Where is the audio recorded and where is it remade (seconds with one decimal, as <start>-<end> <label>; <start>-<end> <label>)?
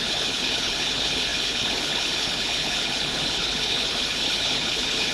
0.0-5.1 remade